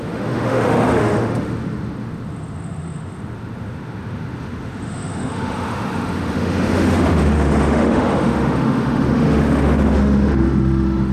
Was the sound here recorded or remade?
remade